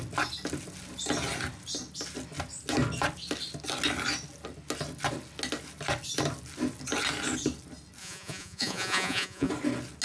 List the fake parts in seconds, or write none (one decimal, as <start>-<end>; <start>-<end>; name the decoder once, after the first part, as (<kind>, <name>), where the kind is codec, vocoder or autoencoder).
8.0-9.5 (vocoder, Vocos)